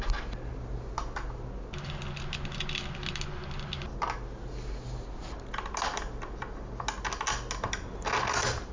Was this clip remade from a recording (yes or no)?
no